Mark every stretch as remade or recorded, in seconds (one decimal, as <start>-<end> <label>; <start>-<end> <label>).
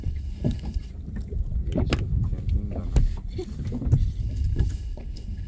0.0-0.9 remade; 0.9-4.2 recorded; 4.2-5.5 remade